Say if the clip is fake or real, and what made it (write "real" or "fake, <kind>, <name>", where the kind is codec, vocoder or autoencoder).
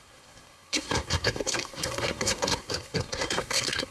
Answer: fake, codec, SNAC